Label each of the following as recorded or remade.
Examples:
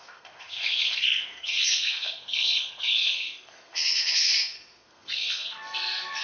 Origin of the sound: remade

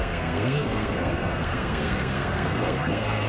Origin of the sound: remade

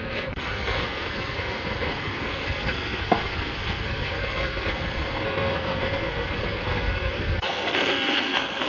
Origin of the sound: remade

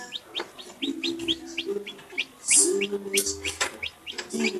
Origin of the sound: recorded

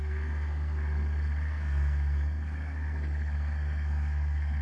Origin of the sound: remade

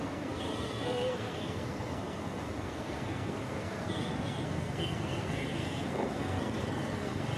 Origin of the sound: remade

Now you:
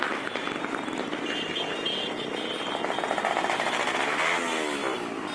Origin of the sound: recorded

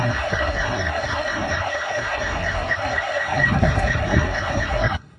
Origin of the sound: remade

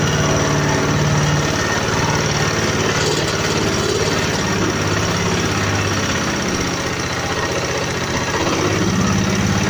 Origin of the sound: recorded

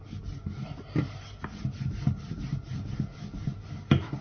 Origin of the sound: recorded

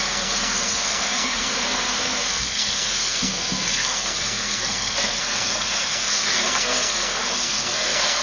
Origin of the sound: remade